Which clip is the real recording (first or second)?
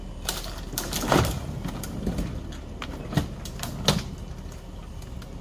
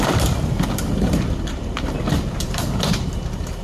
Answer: first